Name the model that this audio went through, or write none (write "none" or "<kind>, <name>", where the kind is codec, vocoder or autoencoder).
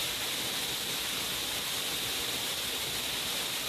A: none